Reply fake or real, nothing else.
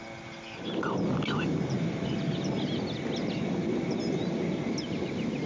real